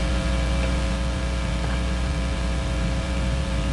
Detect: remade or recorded remade